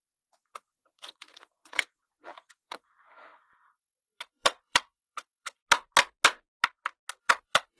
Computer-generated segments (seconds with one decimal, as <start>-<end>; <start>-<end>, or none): 0.0-5.6; 7.2-7.8